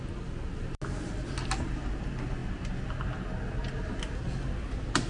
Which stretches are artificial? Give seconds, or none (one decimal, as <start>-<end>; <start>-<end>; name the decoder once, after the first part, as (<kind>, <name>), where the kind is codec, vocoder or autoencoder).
none